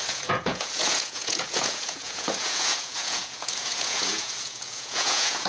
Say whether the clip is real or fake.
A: fake